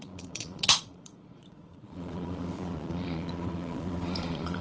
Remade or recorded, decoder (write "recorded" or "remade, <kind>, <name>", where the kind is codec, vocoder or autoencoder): remade, vocoder, Vocos